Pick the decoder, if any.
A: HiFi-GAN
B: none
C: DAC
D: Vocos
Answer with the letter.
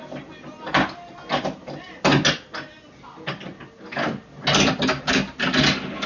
B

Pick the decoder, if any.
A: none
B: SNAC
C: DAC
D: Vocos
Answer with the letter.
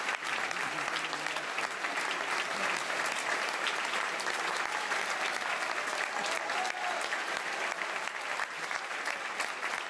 A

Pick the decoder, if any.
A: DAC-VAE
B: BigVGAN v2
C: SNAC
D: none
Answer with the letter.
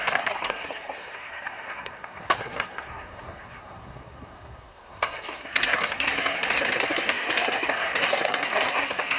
C